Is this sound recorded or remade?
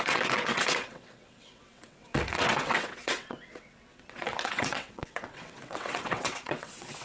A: remade